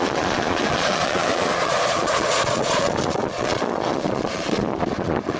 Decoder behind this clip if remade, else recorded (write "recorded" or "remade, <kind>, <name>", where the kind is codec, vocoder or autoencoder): remade, vocoder, Vocos